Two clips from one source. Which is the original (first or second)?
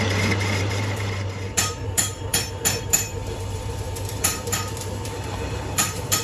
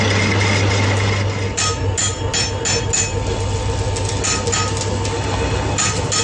second